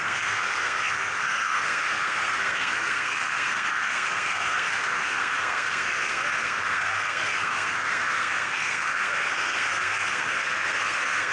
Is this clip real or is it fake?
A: fake